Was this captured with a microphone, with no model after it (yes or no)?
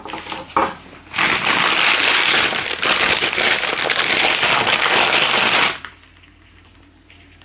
yes